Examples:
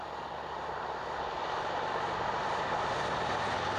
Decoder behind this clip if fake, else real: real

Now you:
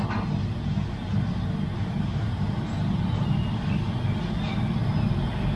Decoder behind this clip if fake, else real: real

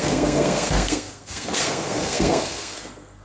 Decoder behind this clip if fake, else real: fake, codec, SNAC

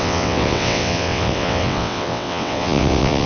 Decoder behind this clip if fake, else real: fake, vocoder, WaveNeXt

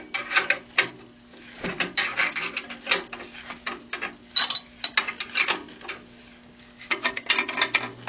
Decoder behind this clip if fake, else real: real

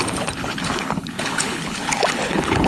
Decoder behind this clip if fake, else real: fake, codec, HILCodec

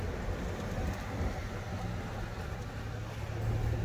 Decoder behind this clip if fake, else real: real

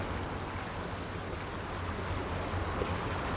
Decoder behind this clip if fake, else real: real